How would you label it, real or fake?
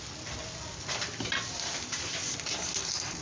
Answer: real